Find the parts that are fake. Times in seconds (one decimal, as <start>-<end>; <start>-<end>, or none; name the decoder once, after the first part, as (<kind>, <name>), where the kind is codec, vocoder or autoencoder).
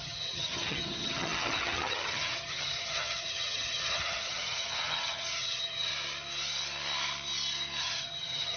0.0-5.9 (vocoder, HiFi-GAN); 7.8-8.6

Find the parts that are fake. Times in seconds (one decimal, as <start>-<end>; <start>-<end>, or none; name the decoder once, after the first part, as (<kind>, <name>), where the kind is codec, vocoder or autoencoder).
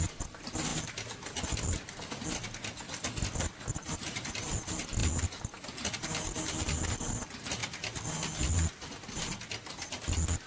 none